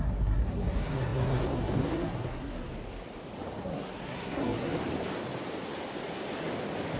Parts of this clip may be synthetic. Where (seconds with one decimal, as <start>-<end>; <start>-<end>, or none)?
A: 0.0-2.7; 3.6-4.8